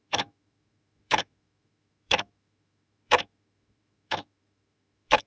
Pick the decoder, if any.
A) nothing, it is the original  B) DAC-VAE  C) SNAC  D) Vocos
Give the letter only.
B